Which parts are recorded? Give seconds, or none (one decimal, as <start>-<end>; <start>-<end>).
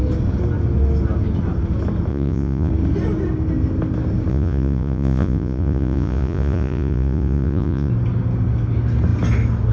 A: 0.0-2.1; 2.7-4.3; 7.9-9.7